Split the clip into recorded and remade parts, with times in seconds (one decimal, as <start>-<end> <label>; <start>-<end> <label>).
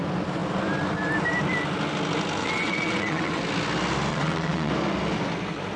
0.0-2.4 recorded; 2.4-3.4 remade; 3.4-4.1 recorded; 4.1-4.7 remade; 4.7-5.8 recorded